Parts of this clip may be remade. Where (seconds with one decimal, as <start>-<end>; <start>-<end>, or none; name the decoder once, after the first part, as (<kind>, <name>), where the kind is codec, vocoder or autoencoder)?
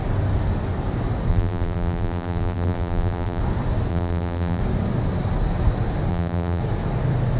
1.3-3.4 (vocoder, BigVGAN v2); 3.9-4.6; 6.1-6.6